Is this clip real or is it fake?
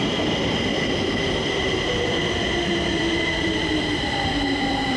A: fake